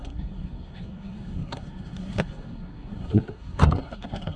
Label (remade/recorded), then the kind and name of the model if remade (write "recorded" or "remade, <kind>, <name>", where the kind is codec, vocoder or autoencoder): remade, codec, SNAC